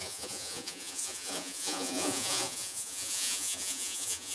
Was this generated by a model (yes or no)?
yes